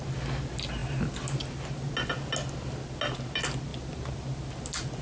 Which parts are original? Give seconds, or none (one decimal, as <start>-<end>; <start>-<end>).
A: 0.0-5.0